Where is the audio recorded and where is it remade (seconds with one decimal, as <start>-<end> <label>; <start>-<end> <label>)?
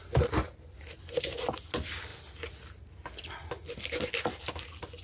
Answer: 0.0-5.0 recorded